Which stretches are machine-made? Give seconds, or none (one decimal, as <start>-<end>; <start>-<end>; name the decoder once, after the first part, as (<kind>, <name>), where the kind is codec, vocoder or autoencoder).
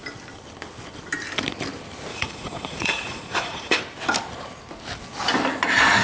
2.1-3.8 (vocoder, Vocos)